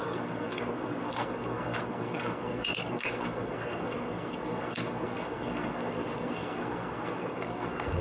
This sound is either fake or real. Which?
fake